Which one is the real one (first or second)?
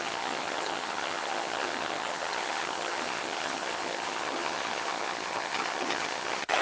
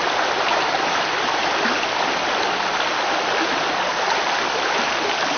second